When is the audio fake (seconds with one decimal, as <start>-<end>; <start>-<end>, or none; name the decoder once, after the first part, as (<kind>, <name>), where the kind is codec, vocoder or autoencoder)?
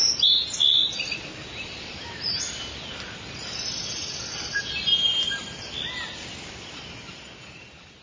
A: none